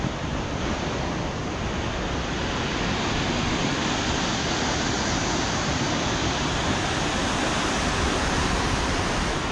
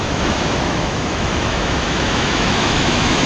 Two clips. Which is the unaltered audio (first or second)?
first